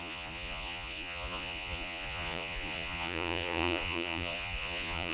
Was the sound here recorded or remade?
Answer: remade